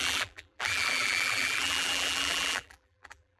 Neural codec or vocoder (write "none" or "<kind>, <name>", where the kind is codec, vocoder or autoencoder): vocoder, BigVGAN v2